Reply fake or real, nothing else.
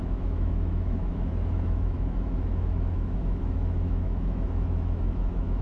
fake